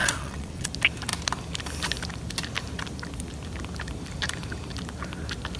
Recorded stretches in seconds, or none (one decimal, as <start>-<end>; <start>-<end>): 0.7-5.6